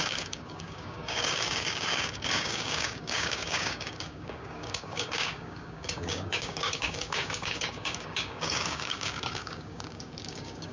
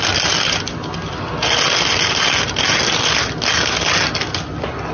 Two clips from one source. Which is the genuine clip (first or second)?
second